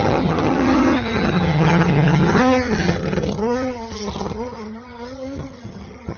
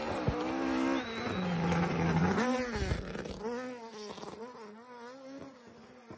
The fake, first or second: first